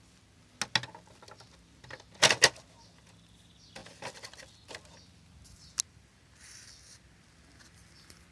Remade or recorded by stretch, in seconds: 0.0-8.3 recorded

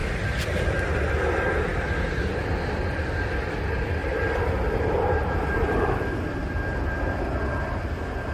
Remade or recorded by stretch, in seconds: 0.0-0.6 remade; 0.6-4.0 recorded; 4.0-6.1 remade; 6.1-8.3 recorded

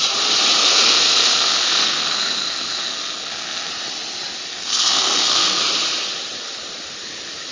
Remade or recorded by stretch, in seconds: 0.0-0.6 recorded; 0.6-3.7 remade; 3.7-4.5 recorded; 4.5-5.6 remade; 5.6-7.5 recorded

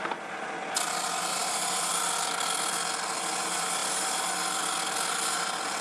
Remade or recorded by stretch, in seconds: 0.0-5.8 recorded

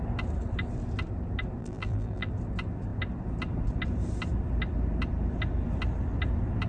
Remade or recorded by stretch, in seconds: 0.0-1.6 recorded; 1.6-2.3 remade; 2.3-6.7 recorded

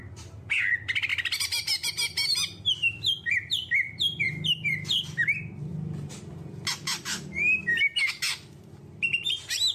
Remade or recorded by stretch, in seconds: 0.0-7.1 recorded; 7.1-7.6 remade; 7.6-9.7 recorded